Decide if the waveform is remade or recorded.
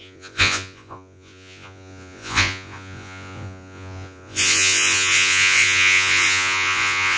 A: remade